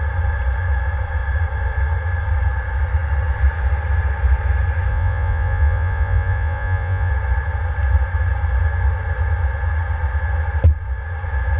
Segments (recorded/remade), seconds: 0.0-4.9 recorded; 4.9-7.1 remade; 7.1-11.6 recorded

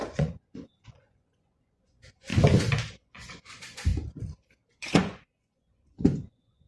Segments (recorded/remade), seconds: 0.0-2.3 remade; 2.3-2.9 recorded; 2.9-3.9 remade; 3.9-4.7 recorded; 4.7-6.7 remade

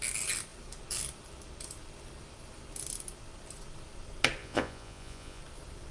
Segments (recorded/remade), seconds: 0.0-4.4 recorded; 4.4-5.4 remade; 5.4-5.9 recorded